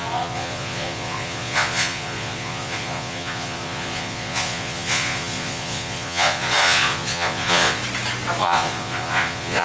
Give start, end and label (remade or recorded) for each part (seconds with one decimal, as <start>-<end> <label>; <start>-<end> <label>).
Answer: 0.0-7.8 remade; 7.8-8.4 recorded; 8.4-9.6 remade